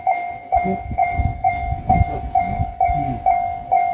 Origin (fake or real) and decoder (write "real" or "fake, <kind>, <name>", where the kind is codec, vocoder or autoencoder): fake, codec, DAC